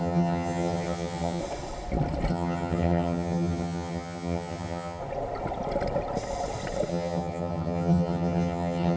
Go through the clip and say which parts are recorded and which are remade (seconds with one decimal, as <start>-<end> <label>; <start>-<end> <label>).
0.0-1.4 remade; 1.4-2.3 recorded; 2.3-5.0 remade; 5.0-6.9 recorded; 6.9-9.0 remade